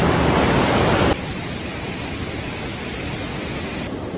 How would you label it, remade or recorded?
recorded